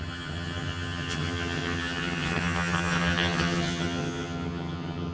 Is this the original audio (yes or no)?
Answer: no